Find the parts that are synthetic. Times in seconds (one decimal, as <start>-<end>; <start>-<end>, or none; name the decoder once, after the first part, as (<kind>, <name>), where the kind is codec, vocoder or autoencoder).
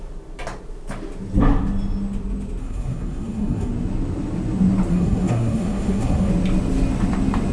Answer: 2.6-3.7 (codec, SNAC); 4.9-6.3